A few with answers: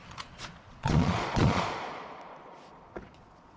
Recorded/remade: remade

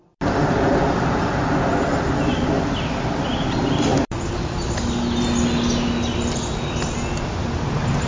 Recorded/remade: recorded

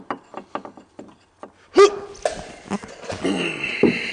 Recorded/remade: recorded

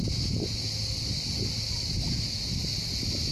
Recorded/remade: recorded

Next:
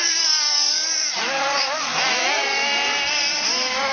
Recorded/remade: remade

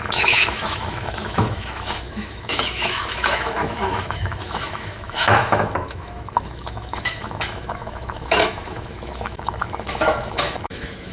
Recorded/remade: remade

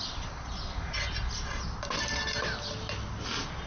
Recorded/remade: recorded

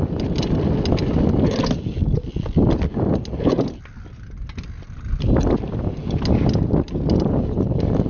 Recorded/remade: recorded